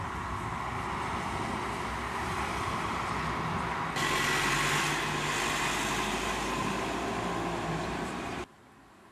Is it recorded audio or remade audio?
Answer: recorded